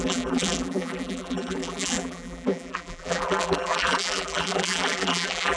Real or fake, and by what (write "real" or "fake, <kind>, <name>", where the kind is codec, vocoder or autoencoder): fake, vocoder, BigVGAN v2